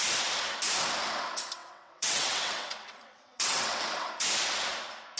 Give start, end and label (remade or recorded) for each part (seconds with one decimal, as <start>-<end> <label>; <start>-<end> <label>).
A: 0.0-1.6 recorded; 1.6-4.1 remade; 4.1-5.2 recorded